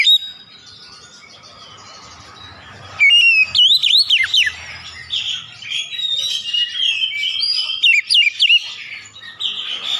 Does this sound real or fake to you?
real